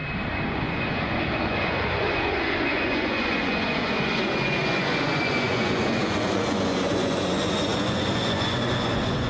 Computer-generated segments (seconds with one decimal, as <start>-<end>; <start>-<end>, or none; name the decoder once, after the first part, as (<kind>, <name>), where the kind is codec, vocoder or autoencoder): 0.5-9.3 (vocoder, Vocos)

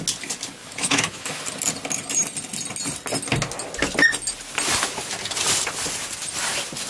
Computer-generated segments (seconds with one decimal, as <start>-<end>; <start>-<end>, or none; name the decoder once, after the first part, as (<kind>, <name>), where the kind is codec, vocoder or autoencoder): 0.6-1.4 (autoencoder, DAC-VAE)

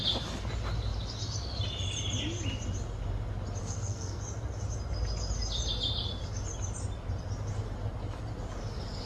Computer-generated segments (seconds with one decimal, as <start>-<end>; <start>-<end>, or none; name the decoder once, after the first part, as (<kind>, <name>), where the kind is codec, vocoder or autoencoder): 3.6-4.2 (codec, SNAC)

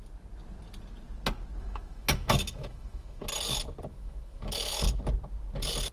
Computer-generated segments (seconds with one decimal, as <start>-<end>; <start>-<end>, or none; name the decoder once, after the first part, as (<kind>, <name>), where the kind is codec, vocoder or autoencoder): 1.6-3.2 (autoencoder, DAC-VAE); 3.9-4.7